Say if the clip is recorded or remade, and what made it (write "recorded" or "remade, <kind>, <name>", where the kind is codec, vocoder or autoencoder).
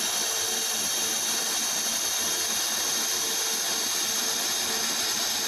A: recorded